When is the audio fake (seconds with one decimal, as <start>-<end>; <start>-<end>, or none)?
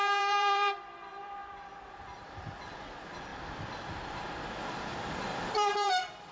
0.0-1.4; 1.9-3.3; 3.9-6.3